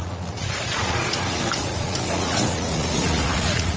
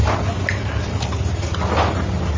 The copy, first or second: first